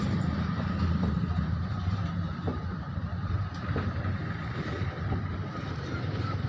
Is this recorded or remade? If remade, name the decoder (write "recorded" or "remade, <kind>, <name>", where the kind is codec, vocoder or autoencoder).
remade, vocoder, BigVGAN v2